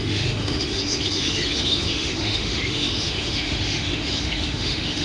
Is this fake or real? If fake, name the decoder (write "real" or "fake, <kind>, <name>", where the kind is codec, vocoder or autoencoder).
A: fake, autoencoder, DAC-VAE